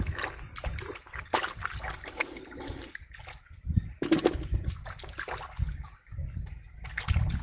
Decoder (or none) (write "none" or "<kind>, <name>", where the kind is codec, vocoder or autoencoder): none